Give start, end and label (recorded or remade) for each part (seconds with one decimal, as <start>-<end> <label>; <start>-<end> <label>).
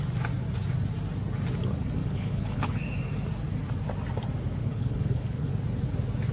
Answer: 0.0-2.0 recorded; 2.0-2.8 remade; 2.8-4.6 recorded; 4.6-5.5 remade; 5.5-6.3 recorded